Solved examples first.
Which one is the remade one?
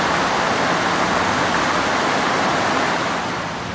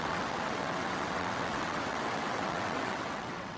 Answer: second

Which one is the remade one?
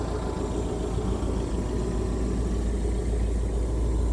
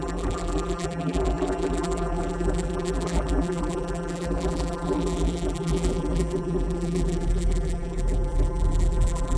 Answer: second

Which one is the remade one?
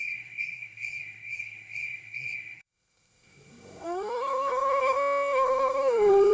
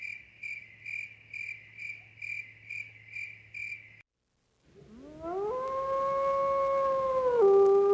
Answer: first